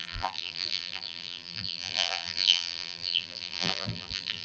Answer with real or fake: fake